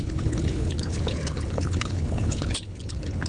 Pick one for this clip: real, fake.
fake